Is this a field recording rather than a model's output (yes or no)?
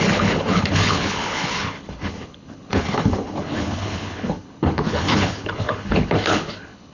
no